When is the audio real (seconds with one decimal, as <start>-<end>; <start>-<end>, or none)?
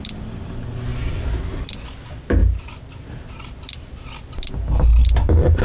0.0-5.6